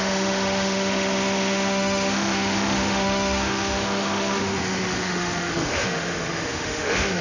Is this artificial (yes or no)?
yes